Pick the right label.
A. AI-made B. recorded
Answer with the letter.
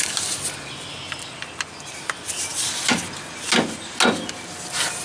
B